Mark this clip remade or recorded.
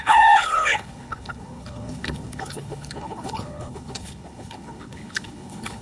remade